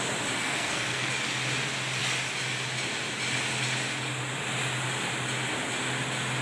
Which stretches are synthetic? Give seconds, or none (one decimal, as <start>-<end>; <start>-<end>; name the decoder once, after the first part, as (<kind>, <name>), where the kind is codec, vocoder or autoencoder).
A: 0.4-1.1 (codec, SNAC)